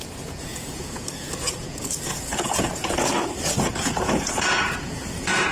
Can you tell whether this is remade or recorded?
remade